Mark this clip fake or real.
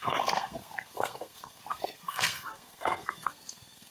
fake